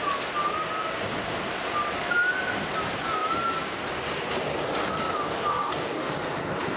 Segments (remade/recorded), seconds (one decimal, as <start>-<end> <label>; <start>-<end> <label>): 0.0-5.5 recorded; 5.5-6.1 remade; 6.1-6.8 recorded

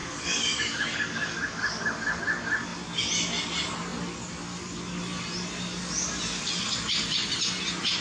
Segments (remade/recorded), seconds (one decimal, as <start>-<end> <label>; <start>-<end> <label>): 0.0-2.2 remade; 2.2-8.0 recorded

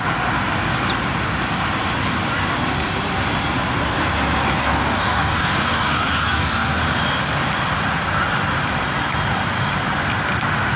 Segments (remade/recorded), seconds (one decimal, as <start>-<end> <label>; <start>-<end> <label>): 0.0-4.6 recorded; 4.6-6.8 remade; 6.8-10.8 recorded

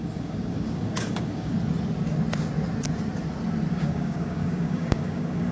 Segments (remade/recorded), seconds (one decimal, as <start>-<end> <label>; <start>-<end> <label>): 0.0-1.5 remade; 1.5-3.7 recorded; 3.7-5.5 remade

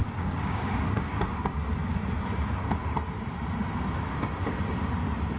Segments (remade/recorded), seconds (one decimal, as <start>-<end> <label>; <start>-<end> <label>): 0.0-1.5 remade; 1.5-5.4 recorded